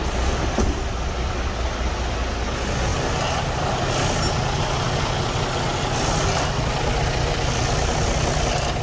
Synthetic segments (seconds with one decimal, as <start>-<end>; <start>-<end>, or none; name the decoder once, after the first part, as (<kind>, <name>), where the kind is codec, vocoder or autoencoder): none